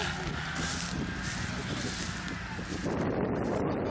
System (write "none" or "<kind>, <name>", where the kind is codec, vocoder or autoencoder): none